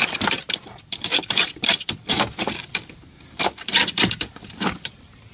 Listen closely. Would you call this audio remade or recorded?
remade